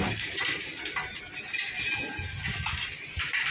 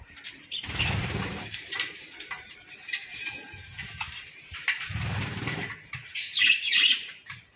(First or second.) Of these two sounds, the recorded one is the first